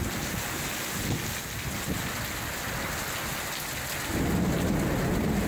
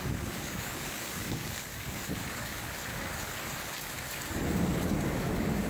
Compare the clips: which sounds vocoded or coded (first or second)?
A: second